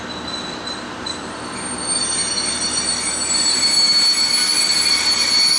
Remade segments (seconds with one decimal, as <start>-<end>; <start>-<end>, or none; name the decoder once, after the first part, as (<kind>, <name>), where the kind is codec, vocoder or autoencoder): none